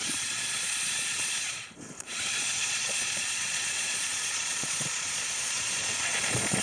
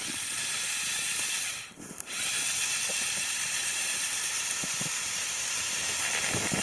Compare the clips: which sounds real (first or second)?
second